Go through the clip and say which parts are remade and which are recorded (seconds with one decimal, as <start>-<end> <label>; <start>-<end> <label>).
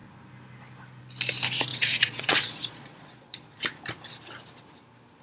0.0-1.7 recorded; 1.7-3.6 remade; 3.6-5.2 recorded